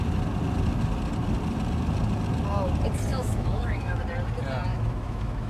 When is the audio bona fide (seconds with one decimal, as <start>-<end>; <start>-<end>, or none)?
0.0-3.1; 4.0-4.7

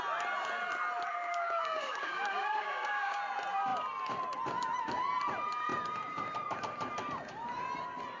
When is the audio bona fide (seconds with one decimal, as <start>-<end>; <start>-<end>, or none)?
0.0-1.1; 3.2-8.2

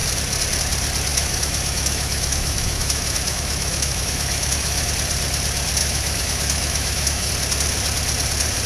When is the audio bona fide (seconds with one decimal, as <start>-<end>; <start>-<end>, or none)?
0.0-1.1; 4.9-5.8; 7.3-8.7

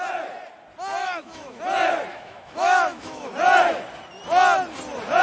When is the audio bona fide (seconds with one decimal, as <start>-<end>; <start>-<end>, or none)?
0.0-1.0; 1.6-2.1; 3.3-5.2